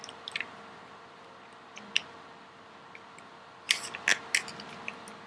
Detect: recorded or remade recorded